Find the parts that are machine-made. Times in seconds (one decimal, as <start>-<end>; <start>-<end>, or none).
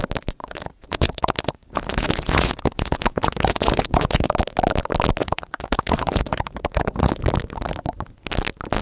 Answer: 0.4-4.3; 5.2-7.1